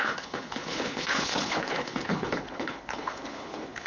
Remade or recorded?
remade